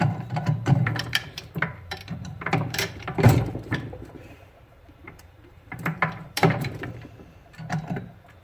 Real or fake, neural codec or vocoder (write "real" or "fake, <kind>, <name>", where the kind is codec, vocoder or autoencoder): fake, vocoder, BigVGAN v2